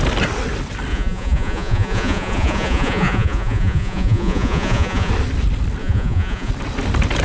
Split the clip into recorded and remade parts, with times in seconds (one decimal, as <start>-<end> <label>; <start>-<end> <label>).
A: 0.0-0.9 recorded; 0.9-5.1 remade; 5.1-5.8 recorded; 5.8-6.5 remade; 6.5-7.2 recorded